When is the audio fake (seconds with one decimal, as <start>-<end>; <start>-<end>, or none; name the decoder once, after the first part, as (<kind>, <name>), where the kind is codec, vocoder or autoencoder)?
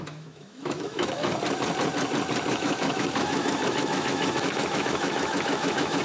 0.0-1.3 (autoencoder, DAC-VAE); 2.5-6.0